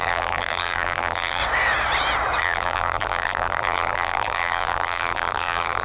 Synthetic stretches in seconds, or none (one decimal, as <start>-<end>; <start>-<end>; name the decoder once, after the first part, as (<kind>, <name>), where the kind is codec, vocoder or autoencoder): 0.0-1.4 (vocoder, BigVGAN v2); 2.4-5.8